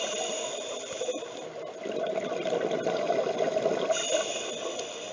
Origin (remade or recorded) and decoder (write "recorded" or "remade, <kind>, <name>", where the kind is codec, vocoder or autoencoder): recorded